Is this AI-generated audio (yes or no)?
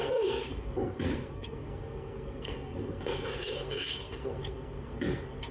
yes